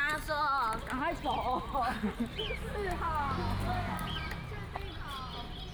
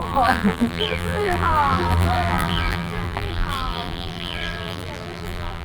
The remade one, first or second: second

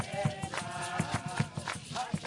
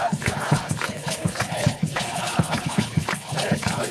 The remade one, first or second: second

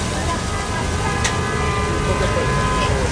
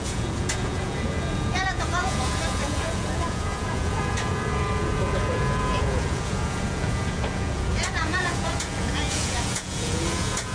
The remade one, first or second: second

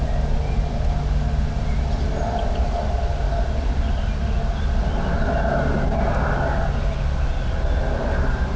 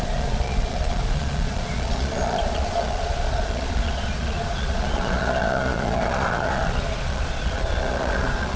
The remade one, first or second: second